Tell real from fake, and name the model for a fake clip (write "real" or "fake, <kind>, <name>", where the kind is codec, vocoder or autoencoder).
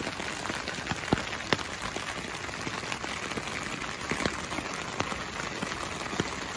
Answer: real